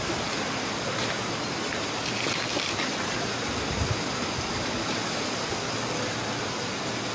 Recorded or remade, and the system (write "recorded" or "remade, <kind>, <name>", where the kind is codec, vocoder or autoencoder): recorded